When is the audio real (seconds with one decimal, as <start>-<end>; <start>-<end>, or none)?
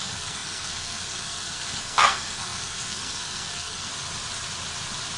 3.9-5.2